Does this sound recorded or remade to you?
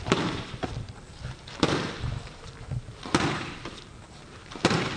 remade